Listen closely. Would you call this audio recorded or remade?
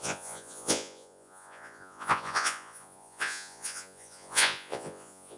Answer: remade